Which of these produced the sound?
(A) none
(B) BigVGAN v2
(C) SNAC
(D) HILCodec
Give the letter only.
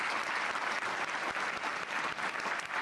A